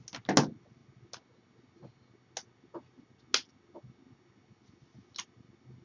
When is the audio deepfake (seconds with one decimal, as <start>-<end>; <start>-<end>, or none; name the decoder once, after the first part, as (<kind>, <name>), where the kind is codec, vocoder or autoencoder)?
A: none